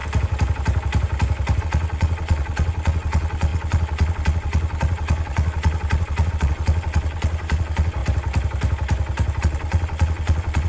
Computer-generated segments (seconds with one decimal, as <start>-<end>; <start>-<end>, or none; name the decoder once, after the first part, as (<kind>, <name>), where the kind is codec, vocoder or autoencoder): 1.6-8.0 (vocoder, Vocos); 9.4-10.7